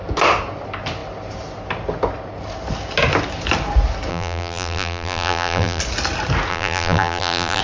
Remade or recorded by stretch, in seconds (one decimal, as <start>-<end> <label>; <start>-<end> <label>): 0.0-4.1 recorded; 4.1-5.8 remade; 5.8-6.5 recorded; 6.5-7.6 remade